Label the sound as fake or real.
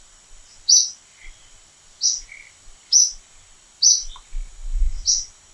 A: real